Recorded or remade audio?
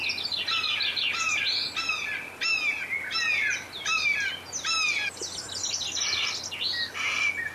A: recorded